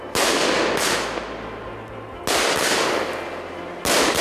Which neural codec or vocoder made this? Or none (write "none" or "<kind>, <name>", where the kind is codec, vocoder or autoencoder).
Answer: none